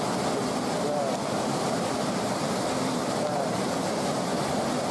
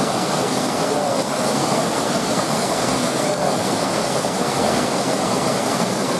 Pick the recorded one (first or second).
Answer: first